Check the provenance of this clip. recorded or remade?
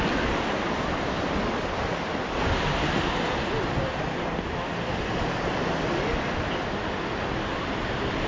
recorded